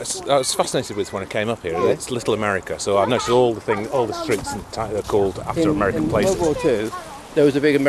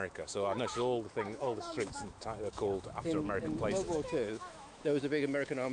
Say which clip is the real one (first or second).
first